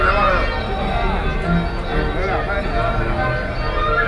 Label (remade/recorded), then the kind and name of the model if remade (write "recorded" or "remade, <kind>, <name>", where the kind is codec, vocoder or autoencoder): recorded